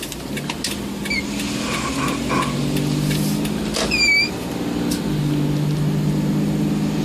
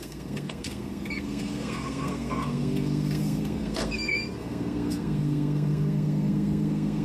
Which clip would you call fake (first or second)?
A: second